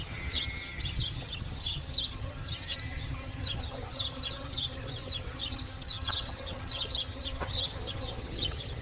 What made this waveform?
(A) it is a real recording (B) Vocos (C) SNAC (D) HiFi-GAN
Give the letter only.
D